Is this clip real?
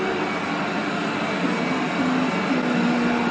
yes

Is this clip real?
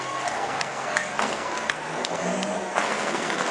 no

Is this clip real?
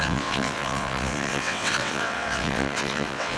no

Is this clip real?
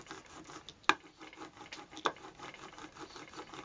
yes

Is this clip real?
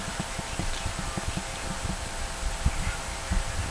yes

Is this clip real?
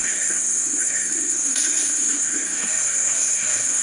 no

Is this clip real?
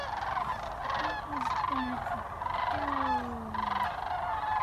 yes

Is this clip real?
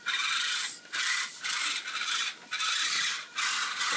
no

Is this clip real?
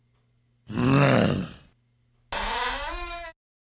yes